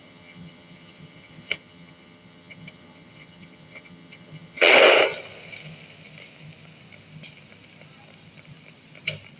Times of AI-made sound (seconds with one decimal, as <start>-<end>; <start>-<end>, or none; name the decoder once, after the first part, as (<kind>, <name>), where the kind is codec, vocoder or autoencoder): 0.0-4.7 (vocoder, HiFi-GAN)